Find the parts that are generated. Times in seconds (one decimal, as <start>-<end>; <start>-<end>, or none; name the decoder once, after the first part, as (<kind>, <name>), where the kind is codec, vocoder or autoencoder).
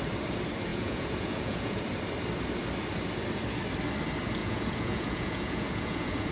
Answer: 0.7-1.8 (vocoder, Vocos); 4.4-6.3